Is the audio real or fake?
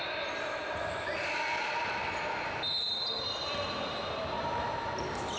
real